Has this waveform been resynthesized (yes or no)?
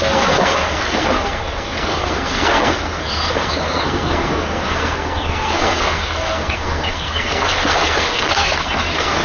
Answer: yes